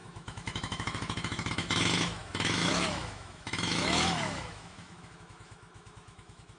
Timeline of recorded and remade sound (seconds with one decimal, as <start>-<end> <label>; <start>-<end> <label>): 0.0-6.6 remade